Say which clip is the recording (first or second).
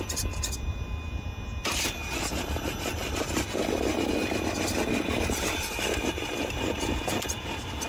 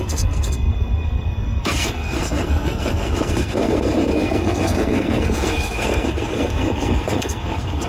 first